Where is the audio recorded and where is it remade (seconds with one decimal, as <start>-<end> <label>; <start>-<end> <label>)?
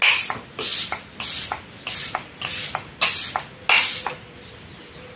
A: 0.0-5.2 recorded